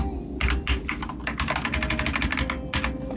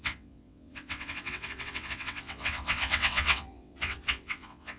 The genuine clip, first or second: first